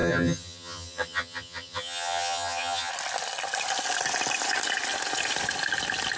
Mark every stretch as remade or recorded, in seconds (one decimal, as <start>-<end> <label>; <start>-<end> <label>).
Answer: 0.0-2.9 remade; 2.9-6.2 recorded

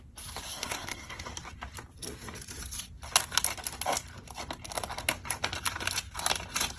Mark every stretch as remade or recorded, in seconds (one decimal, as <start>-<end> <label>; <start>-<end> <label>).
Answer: 0.0-0.5 recorded; 0.5-1.2 remade; 1.2-6.8 recorded

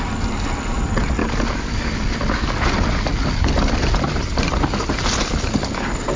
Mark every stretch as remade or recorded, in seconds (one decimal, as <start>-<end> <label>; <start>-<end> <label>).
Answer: 0.0-1.2 recorded; 1.2-2.1 remade; 2.1-6.2 recorded